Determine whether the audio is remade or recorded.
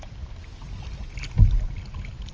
recorded